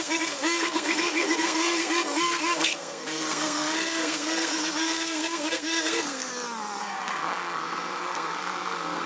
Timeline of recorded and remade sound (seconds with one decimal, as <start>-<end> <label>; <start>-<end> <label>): 0.0-6.3 remade; 6.3-6.8 recorded; 6.8-9.1 remade